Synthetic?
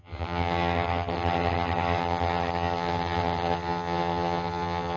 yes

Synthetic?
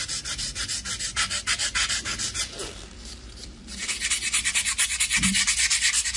no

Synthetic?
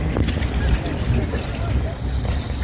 no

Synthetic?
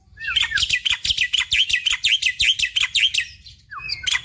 no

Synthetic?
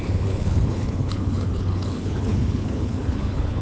yes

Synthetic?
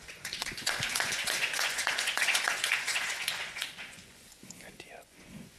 yes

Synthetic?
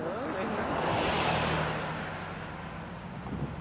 no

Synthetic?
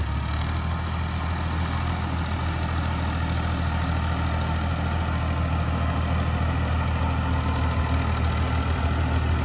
no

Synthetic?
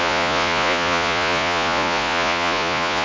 yes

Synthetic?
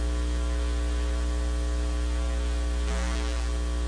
no